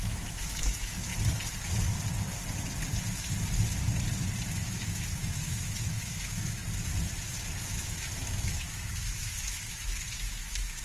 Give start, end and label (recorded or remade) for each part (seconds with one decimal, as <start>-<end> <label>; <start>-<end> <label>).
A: 0.0-1.1 remade; 1.1-4.5 recorded; 4.5-6.6 remade; 6.6-7.7 recorded; 7.7-10.8 remade